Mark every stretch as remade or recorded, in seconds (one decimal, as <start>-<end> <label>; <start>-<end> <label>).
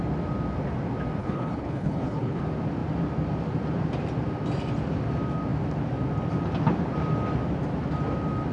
0.0-1.2 recorded; 1.2-2.4 remade; 2.4-8.5 recorded